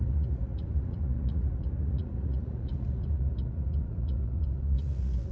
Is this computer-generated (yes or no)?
yes